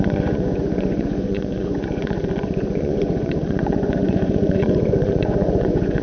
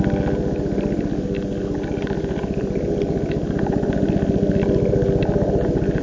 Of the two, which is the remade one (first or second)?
first